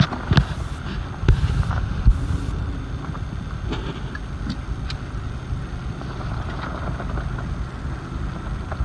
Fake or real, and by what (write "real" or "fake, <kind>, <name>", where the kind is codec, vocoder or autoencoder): real